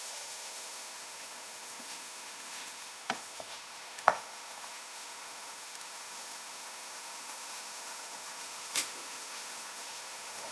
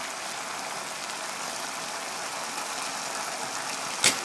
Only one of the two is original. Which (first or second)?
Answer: second